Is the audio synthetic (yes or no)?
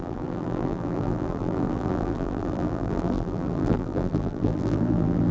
yes